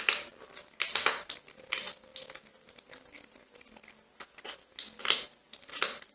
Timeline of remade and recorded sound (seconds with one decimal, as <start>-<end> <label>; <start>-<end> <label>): 0.0-6.1 recorded